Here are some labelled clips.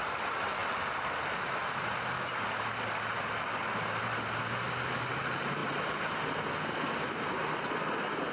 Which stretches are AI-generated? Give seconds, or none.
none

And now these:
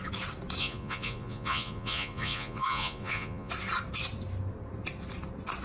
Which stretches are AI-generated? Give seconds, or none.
0.6-3.5 (vocoder, Vocos)

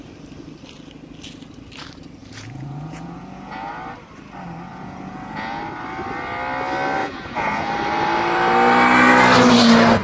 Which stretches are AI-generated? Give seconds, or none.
2.2-3.7 (vocoder, Vocos); 4.7-5.6; 7.0-7.7

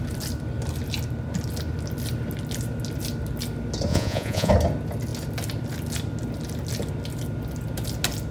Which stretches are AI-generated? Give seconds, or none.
3.9-4.5 (vocoder, Vocos)

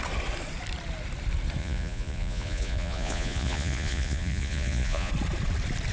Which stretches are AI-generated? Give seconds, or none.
1.6-5.1 (vocoder, Vocos)

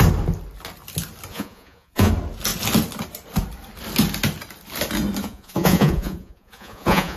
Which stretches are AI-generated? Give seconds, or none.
1.3-2.1 (vocoder, Vocos); 5.2-7.2